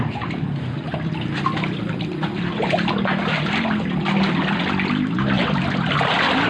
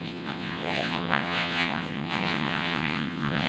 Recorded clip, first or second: first